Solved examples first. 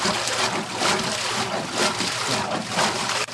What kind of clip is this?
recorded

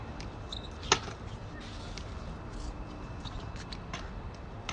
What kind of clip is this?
recorded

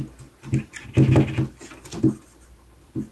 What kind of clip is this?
recorded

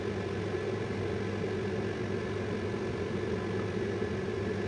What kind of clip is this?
recorded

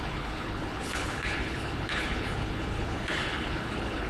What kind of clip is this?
remade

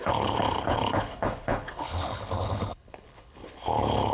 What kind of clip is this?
remade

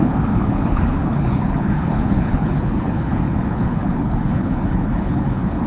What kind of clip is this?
remade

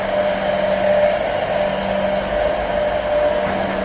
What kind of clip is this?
recorded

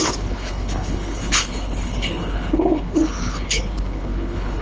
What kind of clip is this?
remade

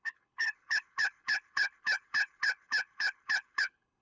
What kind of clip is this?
remade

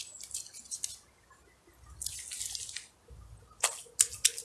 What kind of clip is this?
recorded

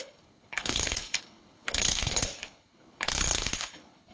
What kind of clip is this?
remade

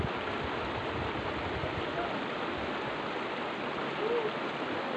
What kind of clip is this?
recorded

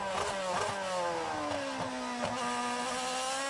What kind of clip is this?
recorded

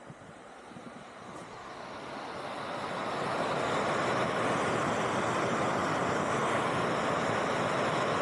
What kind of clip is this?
recorded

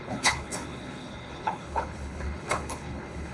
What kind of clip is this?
remade